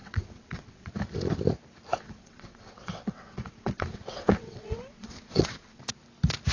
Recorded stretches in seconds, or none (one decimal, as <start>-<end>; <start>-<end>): 0.9-1.9; 5.8-6.5